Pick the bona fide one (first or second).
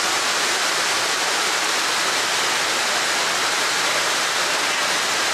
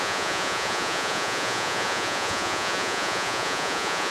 first